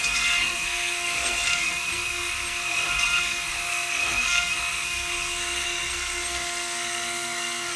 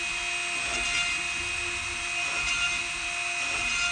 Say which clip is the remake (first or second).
first